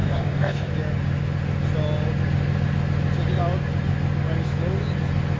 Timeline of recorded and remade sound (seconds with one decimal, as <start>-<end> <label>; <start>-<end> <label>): 0.0-0.7 remade; 0.7-5.4 recorded